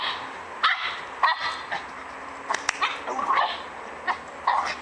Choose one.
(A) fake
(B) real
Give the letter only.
B